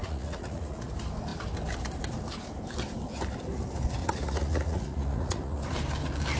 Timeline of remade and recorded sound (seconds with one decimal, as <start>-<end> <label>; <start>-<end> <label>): 0.0-0.9 remade; 0.9-4.0 recorded; 4.0-5.6 remade; 5.6-6.4 recorded